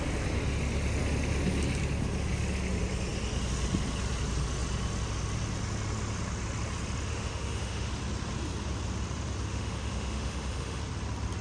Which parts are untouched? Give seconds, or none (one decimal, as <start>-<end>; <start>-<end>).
0.0-7.1; 7.9-9.5; 10.8-11.4